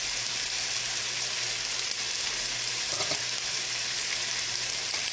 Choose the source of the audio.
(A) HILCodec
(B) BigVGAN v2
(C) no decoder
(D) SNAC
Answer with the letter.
B